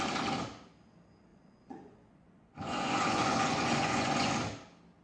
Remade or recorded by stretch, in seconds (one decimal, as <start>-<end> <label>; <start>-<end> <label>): 0.0-1.3 recorded; 1.3-4.3 remade; 4.3-5.0 recorded